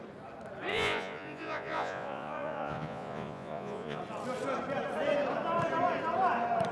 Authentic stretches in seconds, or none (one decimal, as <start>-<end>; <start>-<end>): 0.0-0.7; 4.0-6.7